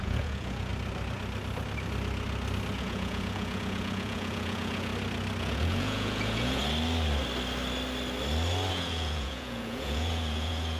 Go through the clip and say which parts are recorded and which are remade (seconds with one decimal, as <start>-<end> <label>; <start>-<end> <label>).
0.0-0.7 remade; 0.7-2.8 recorded; 2.8-4.9 remade; 4.9-5.4 recorded; 5.4-6.6 remade; 6.6-8.7 recorded; 8.7-10.8 remade